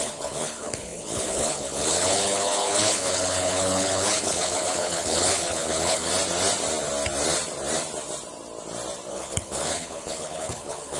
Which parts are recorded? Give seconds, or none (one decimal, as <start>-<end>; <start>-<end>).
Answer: 6.1-9.1